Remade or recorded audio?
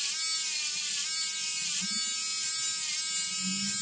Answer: recorded